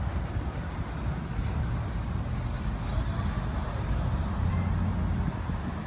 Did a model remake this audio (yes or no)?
no